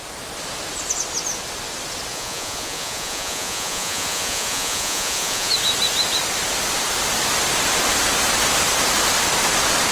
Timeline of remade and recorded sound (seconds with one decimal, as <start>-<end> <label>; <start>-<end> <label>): 0.0-2.1 recorded; 2.1-5.5 remade; 5.5-9.9 recorded